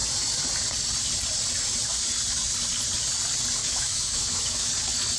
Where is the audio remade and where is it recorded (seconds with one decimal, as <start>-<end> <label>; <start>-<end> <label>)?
0.0-3.6 recorded; 3.6-4.7 remade; 4.7-5.2 recorded